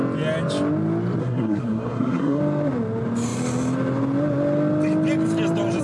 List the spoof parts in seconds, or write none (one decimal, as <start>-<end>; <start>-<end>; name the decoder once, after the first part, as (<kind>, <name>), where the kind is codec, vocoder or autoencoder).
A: 1.2-2.4 (codec, SNAC)